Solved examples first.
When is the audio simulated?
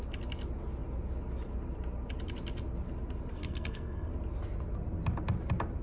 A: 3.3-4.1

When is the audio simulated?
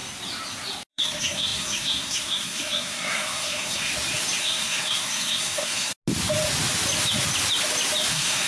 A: 0.9-3.9; 4.4-5.9; 8.1-8.5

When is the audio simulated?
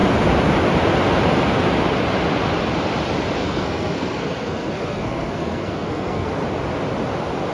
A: 3.4-6.3